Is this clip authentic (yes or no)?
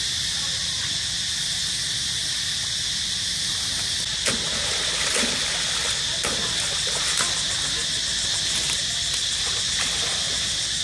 yes